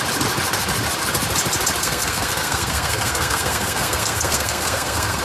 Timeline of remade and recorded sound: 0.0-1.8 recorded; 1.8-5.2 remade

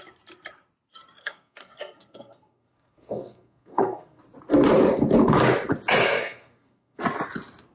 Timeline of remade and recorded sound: 0.0-1.2 recorded; 1.2-4.2 remade; 4.2-6.0 recorded; 6.0-7.0 remade; 7.0-7.7 recorded

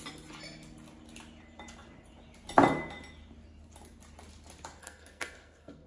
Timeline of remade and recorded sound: 0.0-4.8 recorded; 4.8-5.9 remade

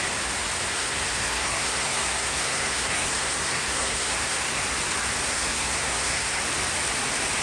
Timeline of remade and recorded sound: 0.0-0.7 recorded; 0.7-4.6 remade; 4.6-5.3 recorded; 5.3-6.4 remade; 6.4-7.4 recorded

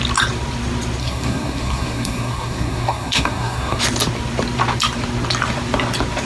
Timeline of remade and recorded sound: 0.0-1.0 recorded; 1.0-3.8 remade; 3.8-6.3 recorded